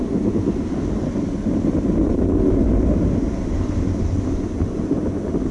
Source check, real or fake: real